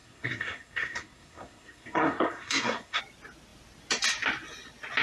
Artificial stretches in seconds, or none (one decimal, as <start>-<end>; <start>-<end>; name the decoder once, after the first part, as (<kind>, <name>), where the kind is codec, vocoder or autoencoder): 0.0-3.0 (codec, SNAC)